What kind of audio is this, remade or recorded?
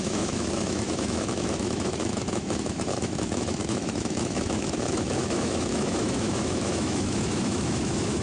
remade